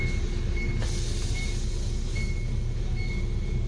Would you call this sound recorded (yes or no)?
yes